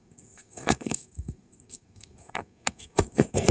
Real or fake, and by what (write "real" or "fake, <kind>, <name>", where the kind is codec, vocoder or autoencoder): fake, codec, SNAC